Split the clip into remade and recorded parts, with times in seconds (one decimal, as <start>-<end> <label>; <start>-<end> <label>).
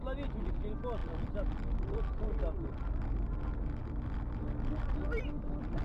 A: 0.0-5.8 recorded